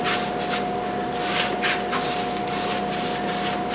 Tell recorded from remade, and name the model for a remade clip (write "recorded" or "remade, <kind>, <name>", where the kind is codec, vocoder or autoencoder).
recorded